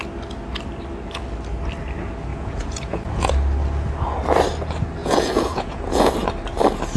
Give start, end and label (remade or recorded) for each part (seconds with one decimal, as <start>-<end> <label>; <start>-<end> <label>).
0.0-2.3 recorded; 2.3-3.3 remade; 3.3-5.0 recorded; 5.0-6.1 remade; 6.1-7.0 recorded

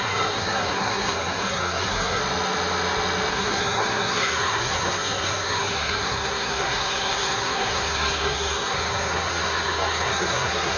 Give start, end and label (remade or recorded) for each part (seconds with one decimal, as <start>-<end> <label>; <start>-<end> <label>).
0.0-2.2 remade; 2.2-3.3 recorded; 3.3-10.8 remade

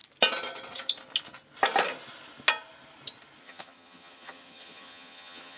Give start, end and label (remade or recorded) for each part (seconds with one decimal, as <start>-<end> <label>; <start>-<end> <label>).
0.0-3.4 recorded; 3.4-5.6 remade

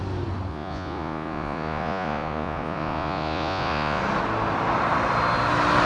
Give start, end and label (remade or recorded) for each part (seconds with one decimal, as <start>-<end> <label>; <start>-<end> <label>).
0.0-0.5 recorded; 0.5-4.0 remade; 4.0-5.9 recorded

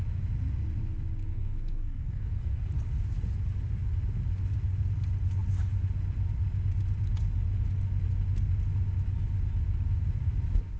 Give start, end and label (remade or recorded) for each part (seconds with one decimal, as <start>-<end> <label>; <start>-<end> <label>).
0.0-1.2 recorded; 1.2-2.7 remade; 2.7-10.8 recorded

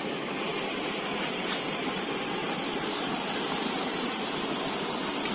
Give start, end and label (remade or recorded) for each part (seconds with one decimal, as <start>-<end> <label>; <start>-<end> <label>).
0.0-2.4 recorded; 2.4-4.4 remade; 4.4-5.3 recorded

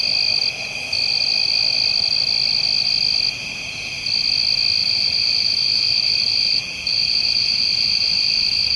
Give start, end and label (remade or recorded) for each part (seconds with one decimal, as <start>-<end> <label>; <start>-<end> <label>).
0.0-4.8 recorded; 4.8-8.8 remade